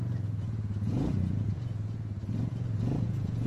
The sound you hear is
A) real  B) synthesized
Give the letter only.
B